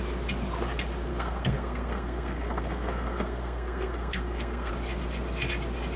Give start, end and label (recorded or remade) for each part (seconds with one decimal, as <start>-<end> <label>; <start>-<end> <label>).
0.0-1.1 recorded; 1.1-4.7 remade; 4.7-6.0 recorded